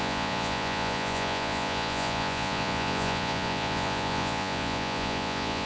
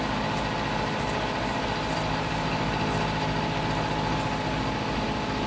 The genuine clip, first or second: second